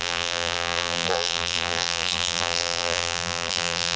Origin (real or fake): fake